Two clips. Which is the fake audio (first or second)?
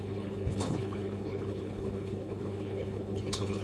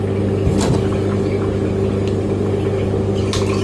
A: first